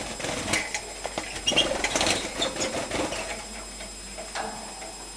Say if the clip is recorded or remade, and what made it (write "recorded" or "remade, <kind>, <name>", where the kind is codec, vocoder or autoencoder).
recorded